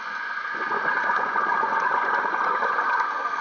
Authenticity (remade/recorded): remade